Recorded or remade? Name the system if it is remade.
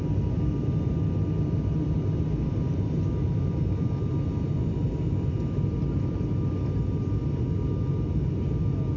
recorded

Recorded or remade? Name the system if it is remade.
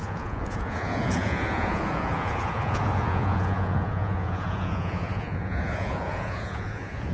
remade, vocoder, Vocos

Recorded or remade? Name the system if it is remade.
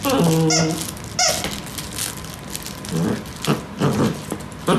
recorded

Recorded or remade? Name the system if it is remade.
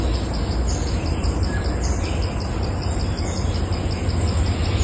recorded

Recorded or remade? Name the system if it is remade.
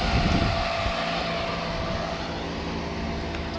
recorded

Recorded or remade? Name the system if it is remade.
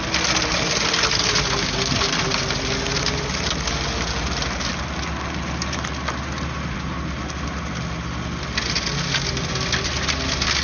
recorded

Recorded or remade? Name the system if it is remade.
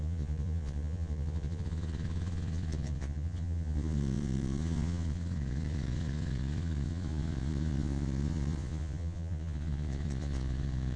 remade, vocoder, Vocos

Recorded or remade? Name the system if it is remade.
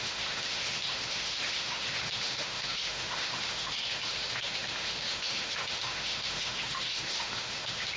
remade, autoencoder, DAC-VAE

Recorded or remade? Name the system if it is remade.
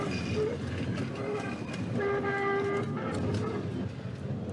recorded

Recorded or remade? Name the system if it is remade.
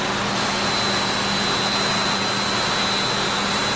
recorded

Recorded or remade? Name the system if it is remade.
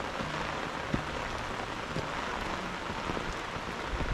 recorded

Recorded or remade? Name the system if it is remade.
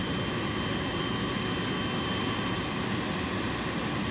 recorded